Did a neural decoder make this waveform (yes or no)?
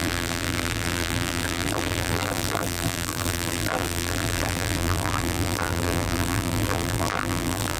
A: yes